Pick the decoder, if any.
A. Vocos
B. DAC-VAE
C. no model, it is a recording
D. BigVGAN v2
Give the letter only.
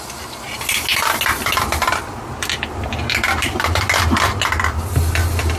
C